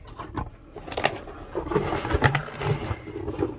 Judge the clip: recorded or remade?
recorded